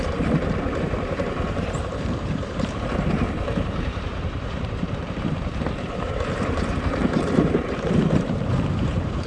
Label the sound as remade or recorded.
remade